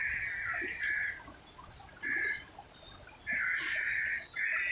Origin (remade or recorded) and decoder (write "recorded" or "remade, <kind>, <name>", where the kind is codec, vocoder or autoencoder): recorded